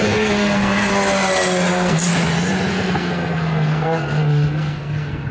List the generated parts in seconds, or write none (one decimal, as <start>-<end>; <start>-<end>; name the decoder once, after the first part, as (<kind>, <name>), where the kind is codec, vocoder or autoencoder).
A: 0.0-0.9 (codec, SNAC); 1.7-2.1; 2.7-5.3